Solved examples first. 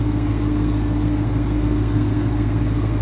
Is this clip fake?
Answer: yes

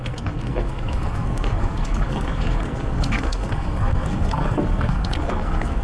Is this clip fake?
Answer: yes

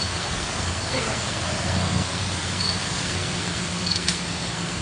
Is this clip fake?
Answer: yes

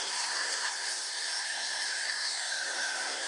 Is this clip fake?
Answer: yes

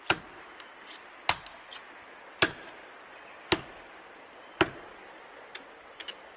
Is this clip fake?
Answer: no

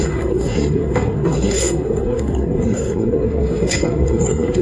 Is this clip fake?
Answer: yes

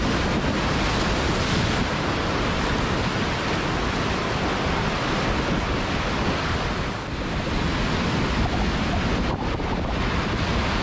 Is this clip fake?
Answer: no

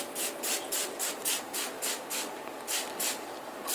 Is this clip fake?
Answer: no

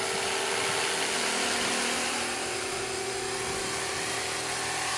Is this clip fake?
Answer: no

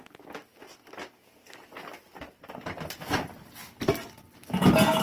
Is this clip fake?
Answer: no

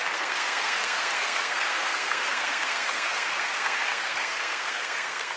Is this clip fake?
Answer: yes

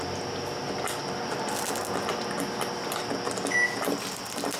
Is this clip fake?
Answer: no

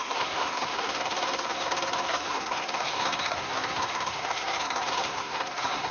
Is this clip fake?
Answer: yes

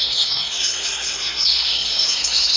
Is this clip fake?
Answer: yes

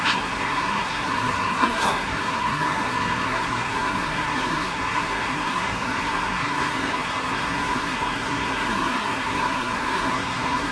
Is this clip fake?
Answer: yes